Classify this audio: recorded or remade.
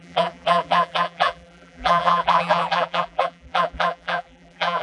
remade